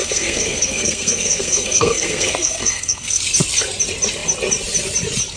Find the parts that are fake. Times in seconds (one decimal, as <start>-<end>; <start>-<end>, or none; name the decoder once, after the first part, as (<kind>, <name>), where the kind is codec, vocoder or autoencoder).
0.0-3.2 (codec, SNAC)